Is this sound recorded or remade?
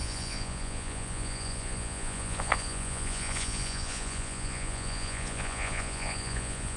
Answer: remade